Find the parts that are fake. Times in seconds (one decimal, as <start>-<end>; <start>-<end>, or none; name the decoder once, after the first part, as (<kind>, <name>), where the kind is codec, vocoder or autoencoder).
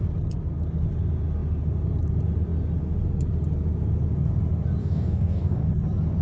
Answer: 4.8-5.7 (codec, DAC)